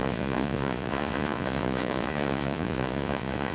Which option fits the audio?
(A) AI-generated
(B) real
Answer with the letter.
A